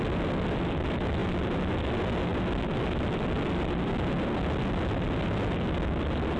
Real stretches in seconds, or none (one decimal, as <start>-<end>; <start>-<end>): 0.0-6.4